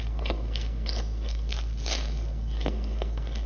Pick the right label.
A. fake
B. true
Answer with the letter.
A